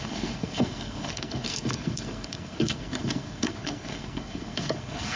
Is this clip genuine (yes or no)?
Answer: no